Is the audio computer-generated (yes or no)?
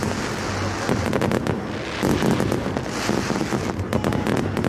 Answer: no